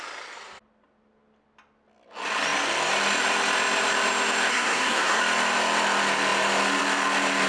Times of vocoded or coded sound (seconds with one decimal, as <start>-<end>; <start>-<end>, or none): 4.5-5.2